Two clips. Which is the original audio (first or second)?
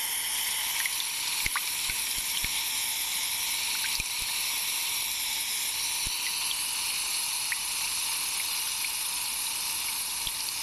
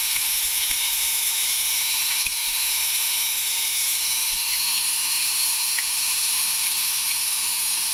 first